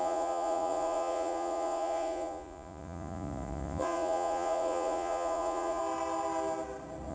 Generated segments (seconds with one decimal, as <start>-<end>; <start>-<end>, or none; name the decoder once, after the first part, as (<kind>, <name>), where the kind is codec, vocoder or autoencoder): 0.0-5.8 (vocoder, Vocos)